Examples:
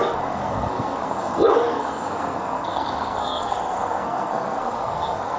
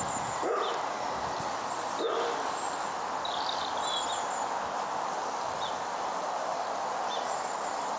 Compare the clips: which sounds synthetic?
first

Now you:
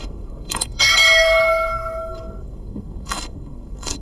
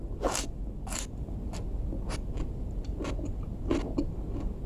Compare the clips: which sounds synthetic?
first